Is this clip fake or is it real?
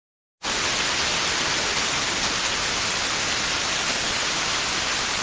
real